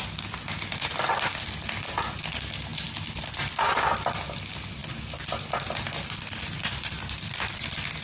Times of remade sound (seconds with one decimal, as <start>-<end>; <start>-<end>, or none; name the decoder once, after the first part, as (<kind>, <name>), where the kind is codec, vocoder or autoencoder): none